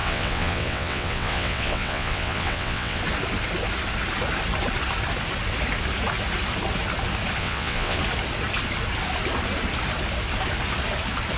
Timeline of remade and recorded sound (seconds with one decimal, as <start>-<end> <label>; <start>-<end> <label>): 0.0-3.0 remade; 3.0-7.4 recorded; 7.4-8.0 remade; 8.0-11.4 recorded